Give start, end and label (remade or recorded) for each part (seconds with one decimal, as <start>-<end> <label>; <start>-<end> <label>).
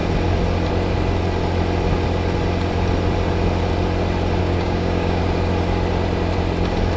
0.0-4.4 recorded; 4.4-5.2 remade; 5.2-7.0 recorded